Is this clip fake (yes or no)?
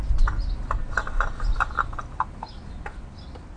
no